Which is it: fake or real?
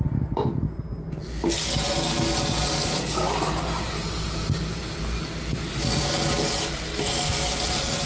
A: real